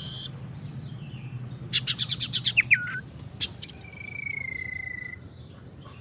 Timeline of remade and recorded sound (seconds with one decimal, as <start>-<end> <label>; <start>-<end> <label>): 0.0-6.0 remade